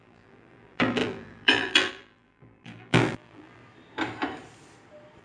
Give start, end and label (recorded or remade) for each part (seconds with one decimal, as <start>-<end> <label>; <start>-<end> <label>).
0.0-3.6 remade; 3.6-5.2 recorded